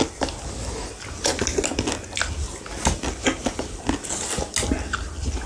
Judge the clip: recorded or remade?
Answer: recorded